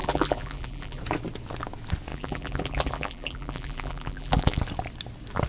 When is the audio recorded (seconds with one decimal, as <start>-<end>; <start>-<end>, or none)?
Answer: 1.0-2.1; 4.6-5.5

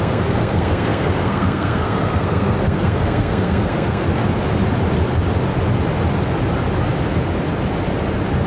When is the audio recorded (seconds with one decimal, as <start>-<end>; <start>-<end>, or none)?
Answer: 4.2-8.5

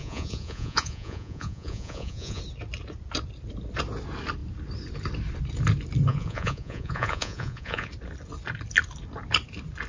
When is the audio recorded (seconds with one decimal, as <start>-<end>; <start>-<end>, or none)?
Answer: 2.4-6.1; 7.9-9.9

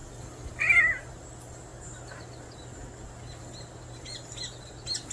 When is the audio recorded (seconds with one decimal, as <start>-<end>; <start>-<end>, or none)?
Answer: 0.0-5.1

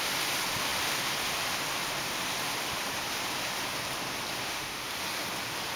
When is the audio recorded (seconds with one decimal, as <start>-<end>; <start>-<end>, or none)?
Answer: 0.0-4.4; 4.9-5.8

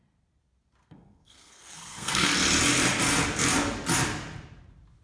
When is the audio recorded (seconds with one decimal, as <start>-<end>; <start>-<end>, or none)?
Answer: 0.0-0.8; 2.3-5.0

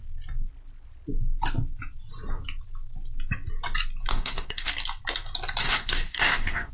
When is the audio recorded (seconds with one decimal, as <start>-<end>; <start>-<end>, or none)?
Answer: 0.0-4.1; 4.7-5.6

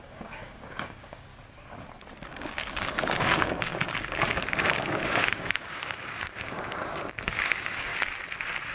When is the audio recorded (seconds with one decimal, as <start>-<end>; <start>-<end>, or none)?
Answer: 1.3-2.3; 7.9-8.7